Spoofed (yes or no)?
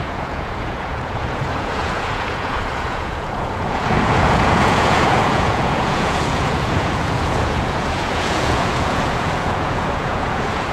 yes